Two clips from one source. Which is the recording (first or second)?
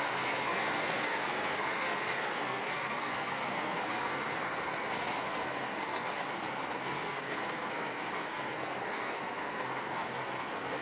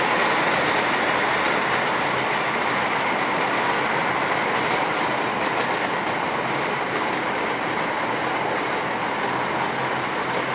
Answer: second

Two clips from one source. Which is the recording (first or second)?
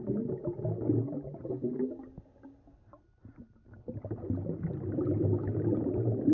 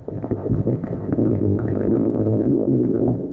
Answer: first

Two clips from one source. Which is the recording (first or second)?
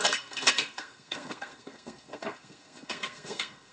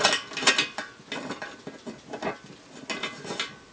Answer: second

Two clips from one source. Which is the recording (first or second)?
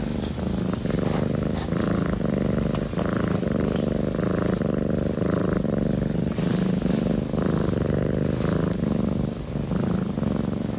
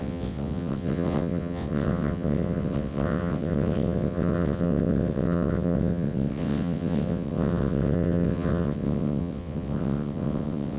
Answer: first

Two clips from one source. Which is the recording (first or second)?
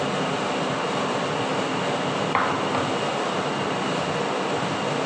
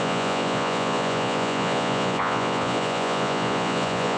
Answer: first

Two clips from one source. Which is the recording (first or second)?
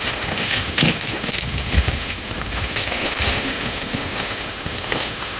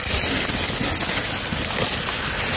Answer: second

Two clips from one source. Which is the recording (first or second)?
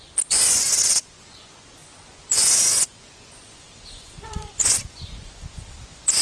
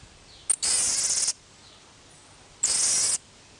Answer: second